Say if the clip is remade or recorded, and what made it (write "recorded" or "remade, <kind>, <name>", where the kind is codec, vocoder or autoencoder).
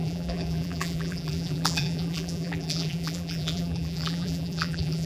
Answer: remade, vocoder, BigVGAN v2